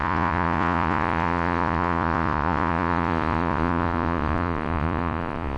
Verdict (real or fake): fake